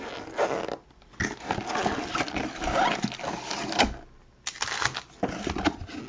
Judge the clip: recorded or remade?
recorded